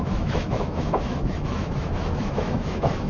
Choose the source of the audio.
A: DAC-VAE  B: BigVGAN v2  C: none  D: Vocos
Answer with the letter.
A